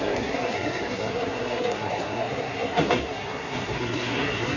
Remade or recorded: remade